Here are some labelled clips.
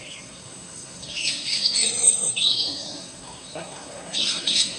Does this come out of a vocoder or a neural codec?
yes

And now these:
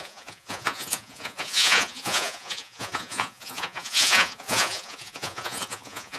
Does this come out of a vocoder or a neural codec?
yes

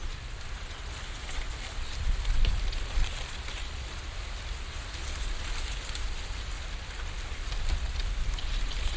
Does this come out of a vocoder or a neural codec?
no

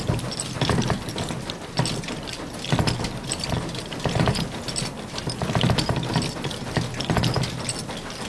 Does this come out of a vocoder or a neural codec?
no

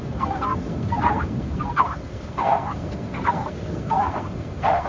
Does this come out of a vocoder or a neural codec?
yes